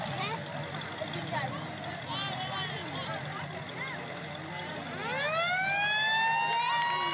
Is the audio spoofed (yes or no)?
no